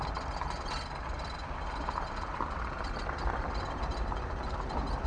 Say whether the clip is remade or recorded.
recorded